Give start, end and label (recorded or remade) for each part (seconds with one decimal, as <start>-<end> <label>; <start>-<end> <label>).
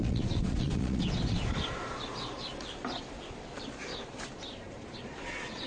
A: 0.0-1.4 remade; 1.4-4.8 recorded; 4.8-5.7 remade